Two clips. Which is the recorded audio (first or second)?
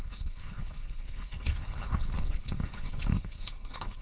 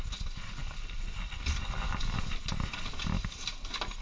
second